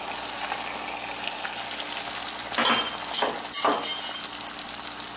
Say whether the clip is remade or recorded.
recorded